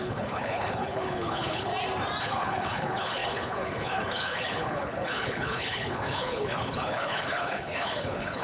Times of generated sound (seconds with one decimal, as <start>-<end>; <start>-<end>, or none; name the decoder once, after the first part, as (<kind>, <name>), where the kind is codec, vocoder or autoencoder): 0.0-1.7 (codec, HILCodec); 2.2-8.4